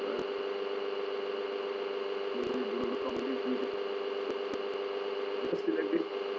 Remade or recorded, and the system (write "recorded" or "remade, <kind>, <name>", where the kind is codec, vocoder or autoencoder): recorded